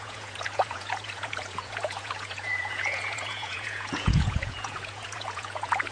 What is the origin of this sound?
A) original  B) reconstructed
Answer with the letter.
B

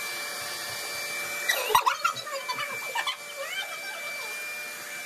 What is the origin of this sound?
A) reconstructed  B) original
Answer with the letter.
B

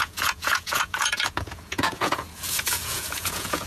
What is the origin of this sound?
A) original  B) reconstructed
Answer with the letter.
B